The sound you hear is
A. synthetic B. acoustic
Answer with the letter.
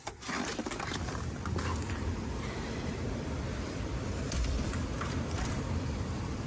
A